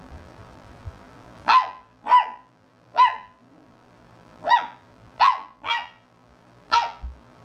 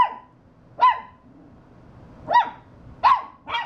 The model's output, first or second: first